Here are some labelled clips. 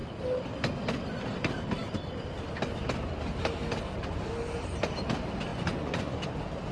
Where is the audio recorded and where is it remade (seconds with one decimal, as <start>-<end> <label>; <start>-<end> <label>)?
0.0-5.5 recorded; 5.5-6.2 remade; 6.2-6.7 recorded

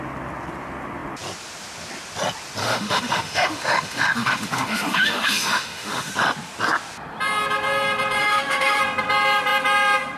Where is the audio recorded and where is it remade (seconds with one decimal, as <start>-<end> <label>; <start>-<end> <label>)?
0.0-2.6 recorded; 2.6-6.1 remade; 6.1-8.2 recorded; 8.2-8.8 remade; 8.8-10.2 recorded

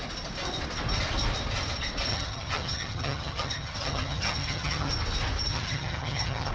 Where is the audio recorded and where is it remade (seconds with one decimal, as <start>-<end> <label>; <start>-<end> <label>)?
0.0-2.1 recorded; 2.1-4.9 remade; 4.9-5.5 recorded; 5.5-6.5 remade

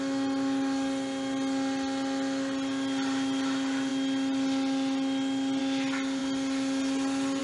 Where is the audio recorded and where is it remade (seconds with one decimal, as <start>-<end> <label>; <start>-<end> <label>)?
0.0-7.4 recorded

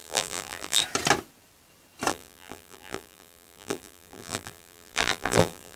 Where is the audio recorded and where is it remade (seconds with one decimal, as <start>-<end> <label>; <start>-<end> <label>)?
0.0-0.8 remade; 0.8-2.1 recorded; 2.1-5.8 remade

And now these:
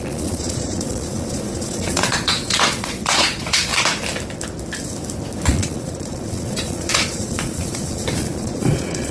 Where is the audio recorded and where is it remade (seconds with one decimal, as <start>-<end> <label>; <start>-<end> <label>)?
0.0-3.7 remade; 3.7-5.5 recorded; 5.5-9.1 remade